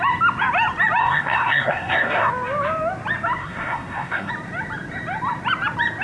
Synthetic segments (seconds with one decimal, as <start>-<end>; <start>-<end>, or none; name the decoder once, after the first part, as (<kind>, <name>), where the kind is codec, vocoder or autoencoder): 1.0-2.3 (codec, SNAC); 3.4-4.3